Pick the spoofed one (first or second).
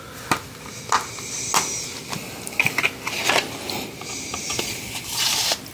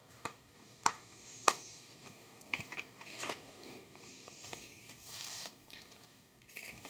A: second